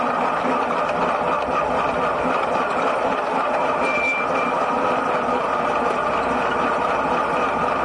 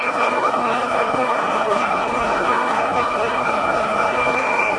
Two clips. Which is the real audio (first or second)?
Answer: first